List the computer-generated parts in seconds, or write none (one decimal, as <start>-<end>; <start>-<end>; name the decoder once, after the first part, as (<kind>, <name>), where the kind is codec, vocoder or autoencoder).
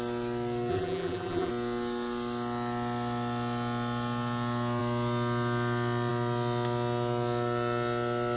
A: 0.7-1.5 (vocoder, BigVGAN v2)